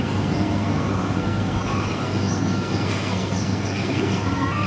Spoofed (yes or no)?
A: yes